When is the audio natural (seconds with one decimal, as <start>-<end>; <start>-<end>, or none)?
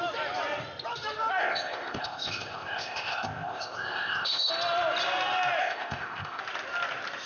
0.0-1.4; 4.5-5.6; 6.4-7.3